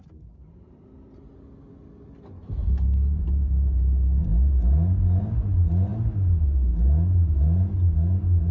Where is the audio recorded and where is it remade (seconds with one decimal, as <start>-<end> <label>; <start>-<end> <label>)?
0.0-8.5 recorded